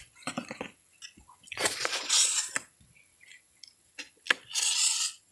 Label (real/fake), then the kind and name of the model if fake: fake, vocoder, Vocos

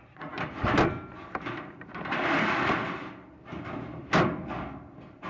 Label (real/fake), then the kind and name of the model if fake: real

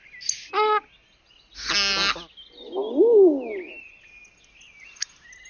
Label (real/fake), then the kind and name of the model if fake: real